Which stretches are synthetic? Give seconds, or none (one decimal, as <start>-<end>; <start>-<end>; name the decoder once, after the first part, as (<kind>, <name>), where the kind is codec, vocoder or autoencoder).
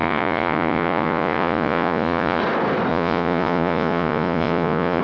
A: 0.0-2.4 (vocoder, Vocos); 2.9-5.0